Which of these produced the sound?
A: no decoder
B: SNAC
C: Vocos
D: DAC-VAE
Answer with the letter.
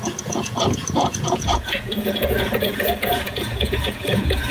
C